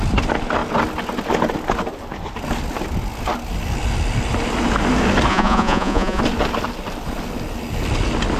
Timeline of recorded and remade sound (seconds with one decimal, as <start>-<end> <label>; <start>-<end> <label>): 0.0-5.3 recorded; 5.3-6.2 remade; 6.2-8.4 recorded

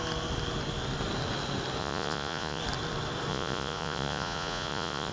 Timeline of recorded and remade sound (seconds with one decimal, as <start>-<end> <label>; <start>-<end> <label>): 0.0-1.8 recorded; 1.8-2.6 remade; 2.6-3.3 recorded; 3.3-5.1 remade

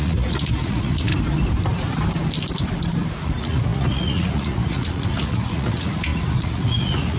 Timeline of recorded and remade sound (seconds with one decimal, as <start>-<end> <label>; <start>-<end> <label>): 0.0-1.1 remade; 1.1-3.1 recorded; 3.1-7.2 remade